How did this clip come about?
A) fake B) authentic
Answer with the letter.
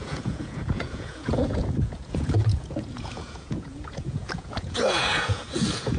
A